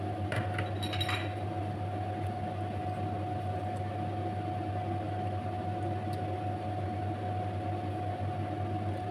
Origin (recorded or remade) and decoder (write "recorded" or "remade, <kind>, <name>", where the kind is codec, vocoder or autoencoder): recorded